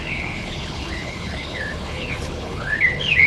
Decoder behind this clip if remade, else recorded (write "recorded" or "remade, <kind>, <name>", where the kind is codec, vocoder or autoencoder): remade, codec, HILCodec